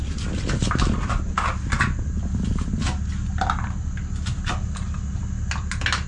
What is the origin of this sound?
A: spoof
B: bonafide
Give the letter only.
B